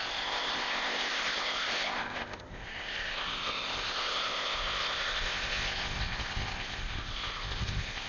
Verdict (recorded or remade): remade